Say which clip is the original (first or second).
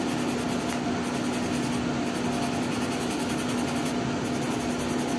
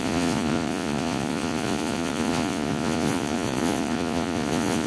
first